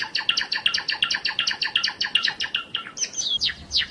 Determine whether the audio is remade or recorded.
recorded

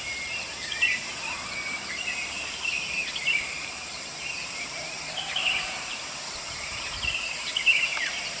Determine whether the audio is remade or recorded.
remade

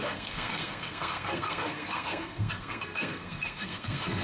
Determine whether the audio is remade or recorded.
remade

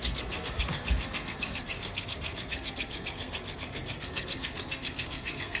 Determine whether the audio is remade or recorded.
remade